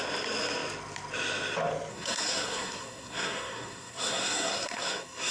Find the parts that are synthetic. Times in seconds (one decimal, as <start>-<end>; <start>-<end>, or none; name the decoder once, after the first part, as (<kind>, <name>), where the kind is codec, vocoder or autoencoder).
1.9-5.3 (codec, SNAC)